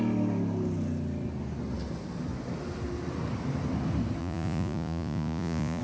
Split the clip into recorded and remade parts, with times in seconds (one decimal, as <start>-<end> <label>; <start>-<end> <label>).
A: 0.0-4.2 recorded; 4.2-5.8 remade